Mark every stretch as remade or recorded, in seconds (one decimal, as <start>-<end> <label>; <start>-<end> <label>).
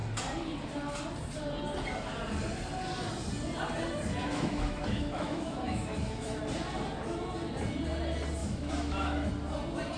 0.0-4.2 recorded; 4.2-6.4 remade; 6.4-8.4 recorded; 8.4-9.3 remade; 9.3-10.0 recorded